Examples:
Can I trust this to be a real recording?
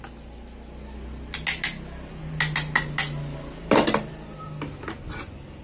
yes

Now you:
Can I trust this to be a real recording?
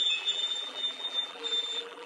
no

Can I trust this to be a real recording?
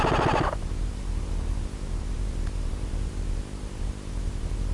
no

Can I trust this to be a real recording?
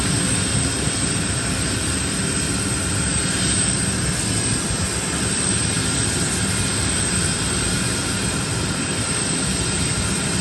yes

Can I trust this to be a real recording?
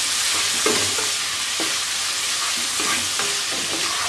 yes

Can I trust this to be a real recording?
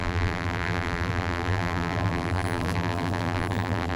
no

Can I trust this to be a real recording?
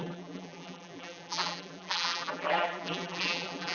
no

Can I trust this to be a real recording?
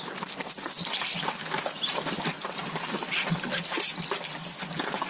no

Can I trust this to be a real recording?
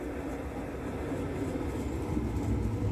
yes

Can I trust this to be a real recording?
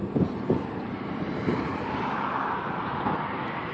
no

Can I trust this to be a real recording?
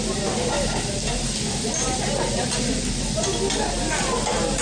yes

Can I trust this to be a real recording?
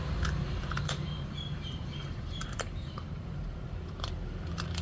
no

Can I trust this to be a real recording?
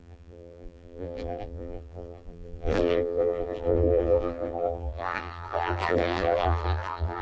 no